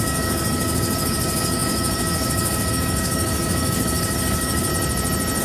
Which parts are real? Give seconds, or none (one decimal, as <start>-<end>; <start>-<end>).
4.7-5.4